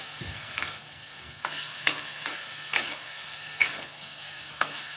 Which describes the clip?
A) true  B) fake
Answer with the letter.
B